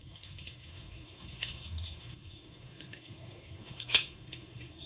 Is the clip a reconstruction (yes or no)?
yes